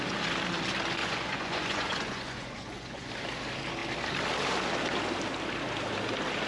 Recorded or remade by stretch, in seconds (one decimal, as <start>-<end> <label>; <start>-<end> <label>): 0.0-1.0 recorded; 1.0-3.1 remade; 3.1-6.5 recorded